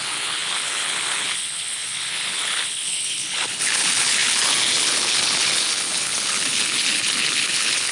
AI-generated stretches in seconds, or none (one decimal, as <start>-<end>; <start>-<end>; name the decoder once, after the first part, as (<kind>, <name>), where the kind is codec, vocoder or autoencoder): 0.0-7.9 (codec, HILCodec)